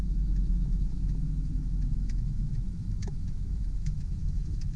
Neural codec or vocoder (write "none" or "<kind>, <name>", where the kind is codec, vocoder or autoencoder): autoencoder, DAC-VAE